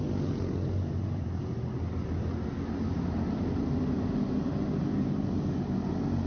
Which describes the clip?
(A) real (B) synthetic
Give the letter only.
A